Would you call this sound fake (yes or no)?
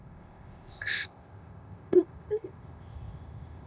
yes